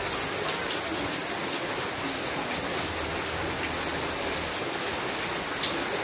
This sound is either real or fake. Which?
real